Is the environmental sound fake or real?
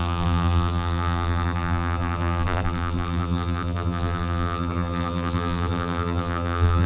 fake